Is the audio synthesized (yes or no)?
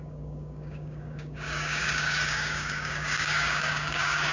yes